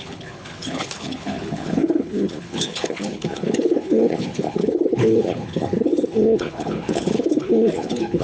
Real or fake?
fake